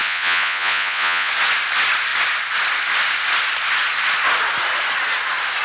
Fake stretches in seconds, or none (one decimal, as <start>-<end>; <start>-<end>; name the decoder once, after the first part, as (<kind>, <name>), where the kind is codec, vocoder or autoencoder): 0.0-1.3 (vocoder, Vocos)